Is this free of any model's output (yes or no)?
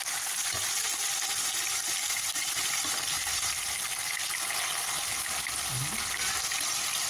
yes